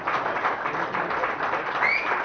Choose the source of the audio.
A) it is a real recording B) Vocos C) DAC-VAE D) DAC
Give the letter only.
A